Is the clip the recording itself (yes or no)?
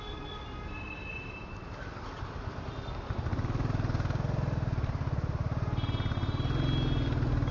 yes